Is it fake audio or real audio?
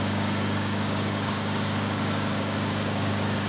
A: fake